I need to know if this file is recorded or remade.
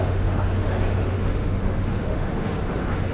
remade